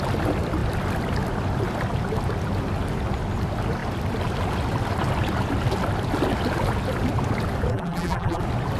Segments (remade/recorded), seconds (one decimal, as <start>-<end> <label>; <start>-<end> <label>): 0.0-7.7 recorded; 7.7-8.4 remade; 8.4-8.8 recorded

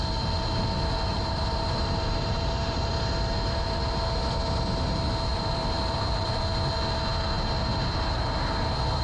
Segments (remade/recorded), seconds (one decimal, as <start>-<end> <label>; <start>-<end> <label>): 0.0-1.1 recorded; 1.1-2.9 remade; 2.9-5.3 recorded; 5.3-6.4 remade; 6.4-9.0 recorded

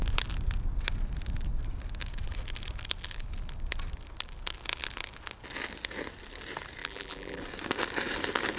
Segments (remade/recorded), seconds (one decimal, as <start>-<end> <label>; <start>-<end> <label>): 0.0-6.8 recorded; 6.8-7.4 remade; 7.4-8.6 recorded

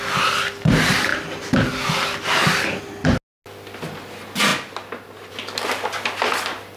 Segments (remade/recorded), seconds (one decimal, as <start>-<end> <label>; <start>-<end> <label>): 0.0-6.8 recorded